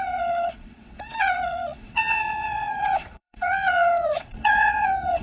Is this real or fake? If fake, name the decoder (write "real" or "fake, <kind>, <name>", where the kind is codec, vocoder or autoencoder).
fake, vocoder, WaveNeXt